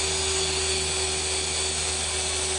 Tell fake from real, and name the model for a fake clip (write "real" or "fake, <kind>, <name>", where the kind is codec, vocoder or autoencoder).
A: real